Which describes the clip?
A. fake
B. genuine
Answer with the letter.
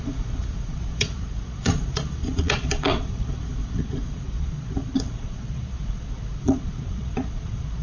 A